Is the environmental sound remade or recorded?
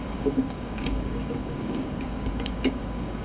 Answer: remade